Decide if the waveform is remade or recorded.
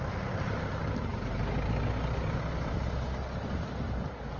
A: recorded